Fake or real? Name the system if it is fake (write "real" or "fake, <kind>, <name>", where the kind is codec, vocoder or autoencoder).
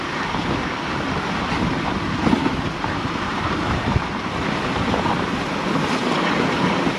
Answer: real